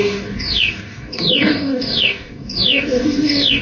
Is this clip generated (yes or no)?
yes